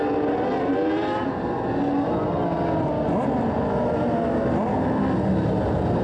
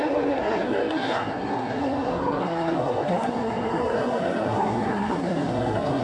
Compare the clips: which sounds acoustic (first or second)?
first